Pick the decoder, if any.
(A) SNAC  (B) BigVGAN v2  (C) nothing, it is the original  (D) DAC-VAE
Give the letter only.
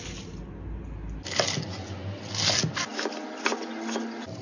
C